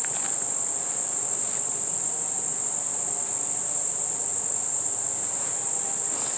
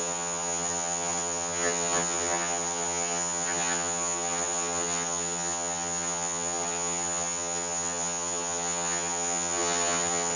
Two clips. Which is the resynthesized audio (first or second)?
second